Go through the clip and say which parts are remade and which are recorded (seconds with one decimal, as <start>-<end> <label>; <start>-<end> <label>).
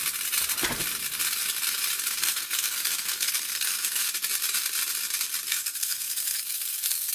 0.0-2.2 recorded; 2.2-4.1 remade; 4.1-5.5 recorded; 5.5-7.1 remade